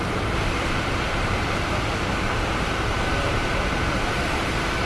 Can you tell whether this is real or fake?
fake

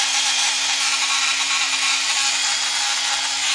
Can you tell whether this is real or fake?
fake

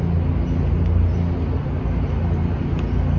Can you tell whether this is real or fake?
real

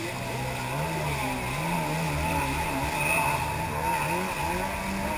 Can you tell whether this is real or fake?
real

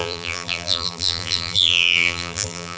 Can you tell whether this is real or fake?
fake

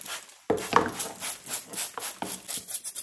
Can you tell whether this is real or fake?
real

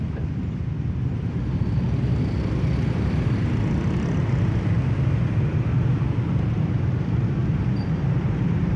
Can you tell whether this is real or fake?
real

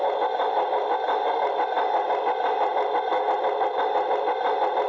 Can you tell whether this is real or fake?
real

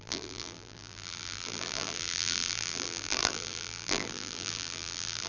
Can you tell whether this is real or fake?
fake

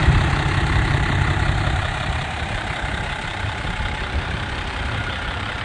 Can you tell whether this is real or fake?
fake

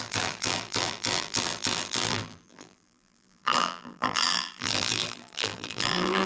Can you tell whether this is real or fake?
fake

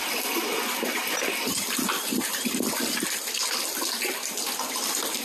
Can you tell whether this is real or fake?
real